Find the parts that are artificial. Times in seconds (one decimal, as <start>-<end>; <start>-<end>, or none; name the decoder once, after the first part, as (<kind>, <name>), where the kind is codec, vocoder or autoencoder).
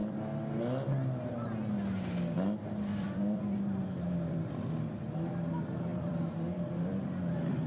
2.9-5.0 (vocoder, BigVGAN v2); 5.9-7.7